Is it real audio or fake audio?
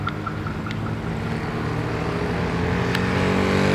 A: real